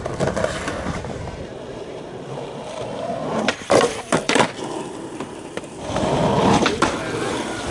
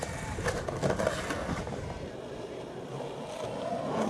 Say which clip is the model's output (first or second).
first